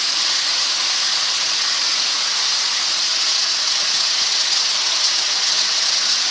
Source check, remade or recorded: remade